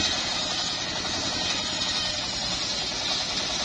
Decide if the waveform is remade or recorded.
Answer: recorded